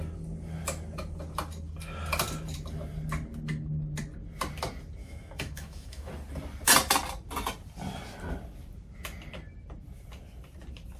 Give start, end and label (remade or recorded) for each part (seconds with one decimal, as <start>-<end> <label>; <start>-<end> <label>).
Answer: 0.0-5.0 recorded; 5.0-6.1 remade; 6.1-11.0 recorded